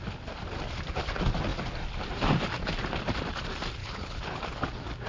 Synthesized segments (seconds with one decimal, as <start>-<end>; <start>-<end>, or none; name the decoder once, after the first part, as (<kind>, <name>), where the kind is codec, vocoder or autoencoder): 3.8-4.4 (codec, HILCodec)